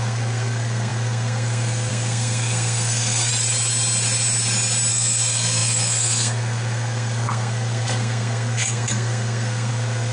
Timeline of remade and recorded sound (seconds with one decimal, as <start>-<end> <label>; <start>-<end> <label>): 0.0-3.3 remade; 3.3-4.9 recorded; 4.9-10.1 remade

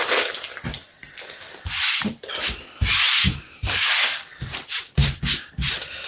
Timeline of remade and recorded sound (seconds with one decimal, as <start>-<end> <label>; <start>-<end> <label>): 0.0-3.2 recorded; 3.2-4.3 remade; 4.3-5.0 recorded; 5.0-5.5 remade; 5.5-6.1 recorded

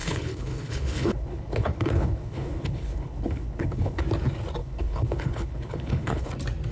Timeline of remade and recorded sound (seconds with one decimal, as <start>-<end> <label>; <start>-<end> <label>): 0.0-4.0 remade; 4.0-4.6 recorded; 4.6-6.3 remade; 6.3-6.7 recorded

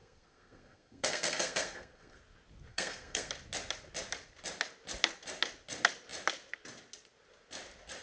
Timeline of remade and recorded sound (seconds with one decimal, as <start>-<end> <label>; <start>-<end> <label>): 0.0-2.2 remade; 2.2-2.7 recorded; 2.7-3.3 remade; 3.3-8.0 recorded

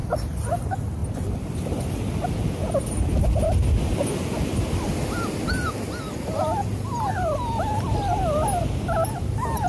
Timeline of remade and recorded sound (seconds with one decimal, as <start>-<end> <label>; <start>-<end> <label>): 0.0-0.5 remade; 0.5-1.0 recorded; 1.0-3.1 remade; 3.1-9.7 recorded

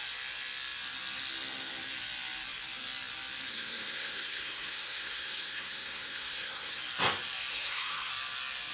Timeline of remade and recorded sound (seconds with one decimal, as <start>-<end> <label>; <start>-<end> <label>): 0.0-3.5 recorded; 3.5-6.8 remade; 6.8-7.5 recorded; 7.5-8.1 remade; 8.1-8.7 recorded

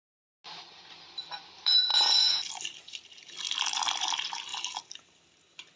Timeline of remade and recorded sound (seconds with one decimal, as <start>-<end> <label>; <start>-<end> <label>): 0.0-5.8 recorded